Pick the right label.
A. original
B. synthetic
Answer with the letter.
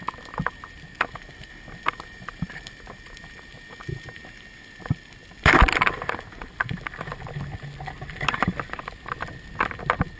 A